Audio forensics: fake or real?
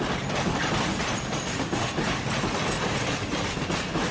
real